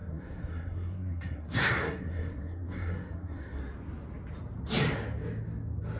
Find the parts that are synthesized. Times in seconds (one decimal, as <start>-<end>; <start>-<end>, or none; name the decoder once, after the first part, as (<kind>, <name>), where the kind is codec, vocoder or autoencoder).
0.0-3.6 (codec, SNAC)